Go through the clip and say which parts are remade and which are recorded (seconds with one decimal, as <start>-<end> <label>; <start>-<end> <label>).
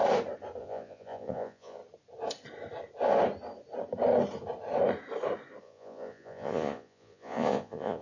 0.0-0.6 recorded; 0.6-1.8 remade; 1.8-5.6 recorded; 5.6-8.0 remade